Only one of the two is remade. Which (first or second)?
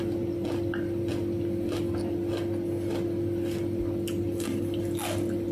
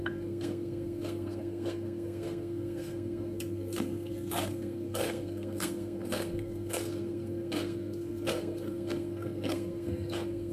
second